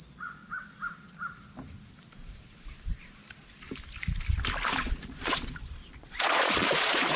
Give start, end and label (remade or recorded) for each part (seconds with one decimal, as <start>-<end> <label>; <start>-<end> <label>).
0.0-0.4 remade; 0.4-4.7 recorded; 4.7-7.2 remade